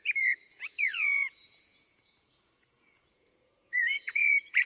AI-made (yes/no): yes